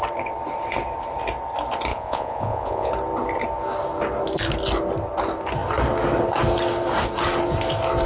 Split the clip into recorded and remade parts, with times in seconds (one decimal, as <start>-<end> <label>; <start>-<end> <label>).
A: 0.0-1.9 recorded; 1.9-2.9 remade; 2.9-8.1 recorded